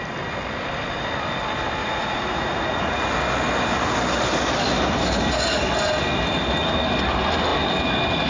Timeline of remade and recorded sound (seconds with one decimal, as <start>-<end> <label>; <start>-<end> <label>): 0.0-1.8 recorded; 1.8-3.1 remade; 3.1-8.3 recorded